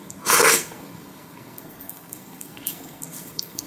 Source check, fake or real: fake